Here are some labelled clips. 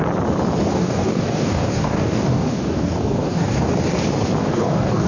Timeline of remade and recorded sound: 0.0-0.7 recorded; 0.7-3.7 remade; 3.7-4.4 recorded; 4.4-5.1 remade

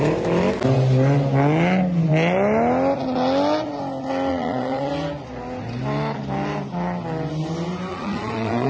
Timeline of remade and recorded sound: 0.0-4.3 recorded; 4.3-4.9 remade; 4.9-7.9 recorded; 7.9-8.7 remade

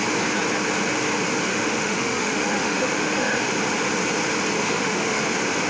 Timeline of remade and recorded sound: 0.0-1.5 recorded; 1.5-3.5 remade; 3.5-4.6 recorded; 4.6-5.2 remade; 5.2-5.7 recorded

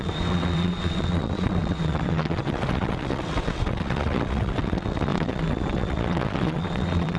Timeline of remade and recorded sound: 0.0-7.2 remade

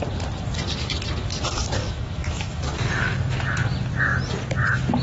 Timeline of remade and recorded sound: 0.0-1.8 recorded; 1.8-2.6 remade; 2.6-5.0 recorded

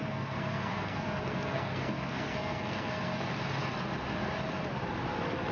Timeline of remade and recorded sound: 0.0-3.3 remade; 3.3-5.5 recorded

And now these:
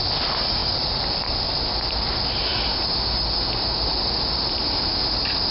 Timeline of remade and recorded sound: 0.0-0.6 recorded; 0.6-1.3 remade; 1.3-5.5 recorded